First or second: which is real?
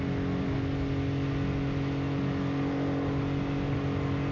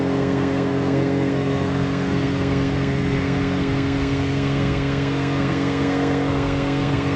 first